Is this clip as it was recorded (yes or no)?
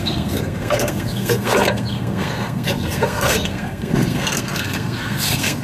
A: no